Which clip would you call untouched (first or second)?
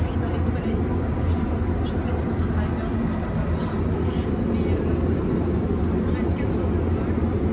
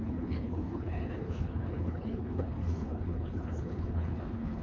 first